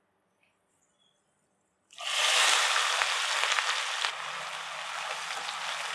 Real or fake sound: real